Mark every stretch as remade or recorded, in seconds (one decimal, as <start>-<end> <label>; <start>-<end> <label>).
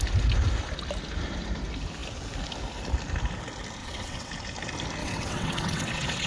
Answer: 0.0-3.8 recorded; 3.8-4.3 remade; 4.3-5.0 recorded; 5.0-6.3 remade